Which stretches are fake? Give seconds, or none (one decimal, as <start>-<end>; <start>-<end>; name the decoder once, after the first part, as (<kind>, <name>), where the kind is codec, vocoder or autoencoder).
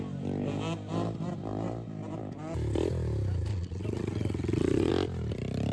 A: 3.5-4.9 (vocoder, Vocos)